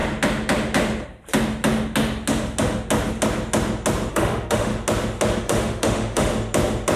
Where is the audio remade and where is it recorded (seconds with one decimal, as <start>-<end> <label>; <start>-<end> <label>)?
0.0-4.1 recorded; 4.1-4.7 remade; 4.7-5.4 recorded; 5.4-6.3 remade; 6.3-7.0 recorded